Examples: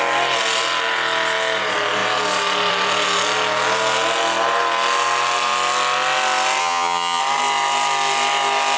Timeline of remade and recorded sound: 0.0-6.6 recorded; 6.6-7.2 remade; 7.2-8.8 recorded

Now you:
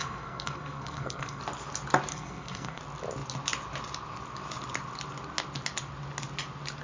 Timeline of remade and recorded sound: 0.0-1.4 remade; 1.4-2.1 recorded; 2.1-2.8 remade; 2.8-6.8 recorded

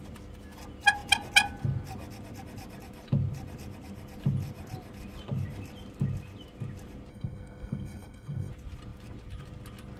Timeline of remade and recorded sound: 0.0-7.1 recorded; 7.1-8.5 remade; 8.5-10.0 recorded

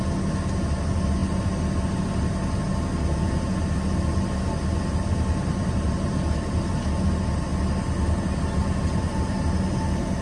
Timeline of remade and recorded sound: 0.0-10.2 recorded

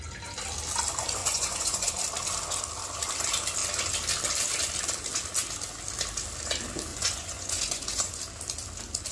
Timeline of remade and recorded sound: 0.0-1.2 recorded; 1.2-1.9 remade; 1.9-6.9 recorded; 6.9-8.2 remade; 8.2-9.1 recorded

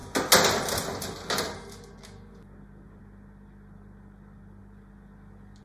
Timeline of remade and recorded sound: 0.0-5.6 recorded